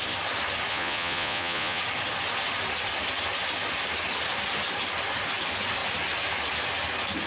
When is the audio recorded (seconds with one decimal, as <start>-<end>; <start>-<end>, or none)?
0.0-0.7; 1.8-7.3